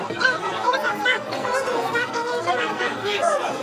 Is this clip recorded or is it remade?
remade